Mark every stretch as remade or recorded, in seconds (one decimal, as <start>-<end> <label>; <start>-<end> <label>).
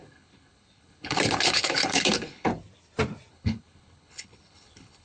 0.0-2.5 remade; 2.5-3.3 recorded; 3.3-5.0 remade